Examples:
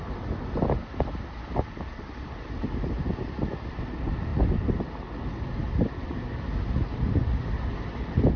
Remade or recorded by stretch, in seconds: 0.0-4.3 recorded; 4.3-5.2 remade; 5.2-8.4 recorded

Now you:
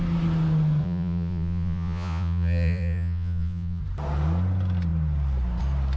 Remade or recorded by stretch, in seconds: 0.0-0.8 recorded; 0.8-3.8 remade; 3.8-6.0 recorded

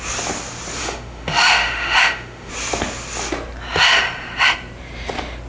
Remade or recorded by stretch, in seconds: 0.0-0.8 recorded; 0.8-2.5 remade; 2.5-5.5 recorded

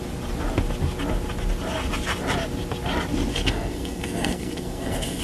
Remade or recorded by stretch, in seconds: 0.0-3.3 recorded; 3.3-5.2 remade